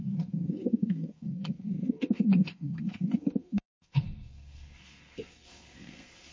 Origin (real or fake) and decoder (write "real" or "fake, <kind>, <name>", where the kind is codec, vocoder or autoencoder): fake, codec, SNAC